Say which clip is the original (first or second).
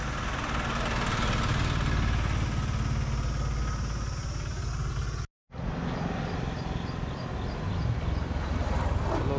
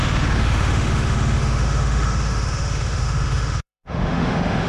first